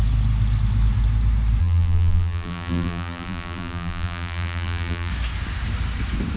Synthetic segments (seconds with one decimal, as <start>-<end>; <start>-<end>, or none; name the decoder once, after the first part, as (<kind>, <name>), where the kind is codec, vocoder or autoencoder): 1.6-5.1 (vocoder, BigVGAN v2)